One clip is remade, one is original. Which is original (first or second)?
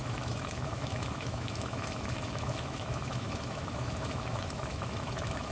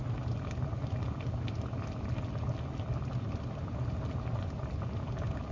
second